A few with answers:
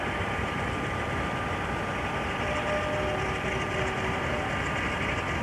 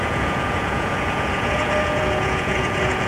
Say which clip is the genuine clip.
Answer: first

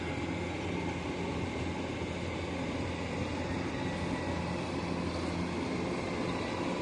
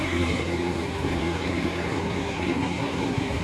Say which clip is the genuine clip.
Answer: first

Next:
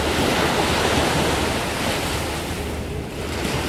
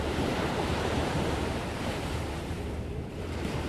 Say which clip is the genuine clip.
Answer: first